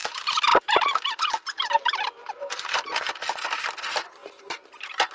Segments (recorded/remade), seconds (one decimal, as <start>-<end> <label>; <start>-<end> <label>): 0.0-5.1 remade